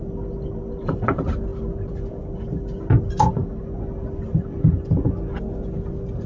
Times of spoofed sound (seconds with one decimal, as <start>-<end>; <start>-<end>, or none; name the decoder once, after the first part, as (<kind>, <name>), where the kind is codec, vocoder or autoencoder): none